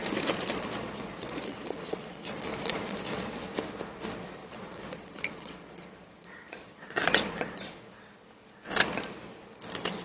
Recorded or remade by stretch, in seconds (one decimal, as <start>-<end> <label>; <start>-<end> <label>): 0.0-0.4 recorded; 0.4-3.3 remade; 3.3-4.4 recorded; 4.4-7.8 remade; 7.8-10.0 recorded